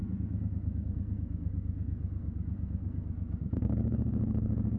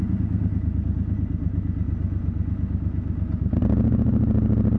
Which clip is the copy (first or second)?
first